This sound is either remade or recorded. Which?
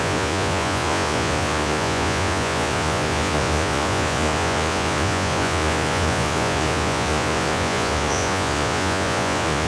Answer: remade